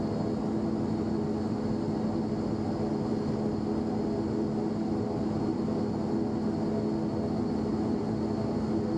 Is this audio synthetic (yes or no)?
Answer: no